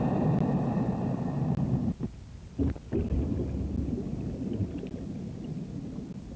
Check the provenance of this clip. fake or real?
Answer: real